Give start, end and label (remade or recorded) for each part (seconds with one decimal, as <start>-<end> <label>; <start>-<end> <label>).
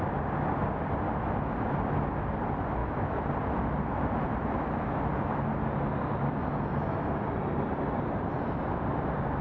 0.0-2.8 recorded; 2.8-3.3 remade; 3.3-9.4 recorded